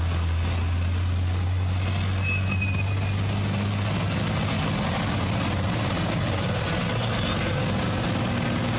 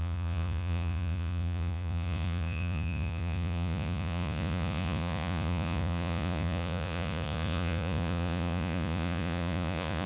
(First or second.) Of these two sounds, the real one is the first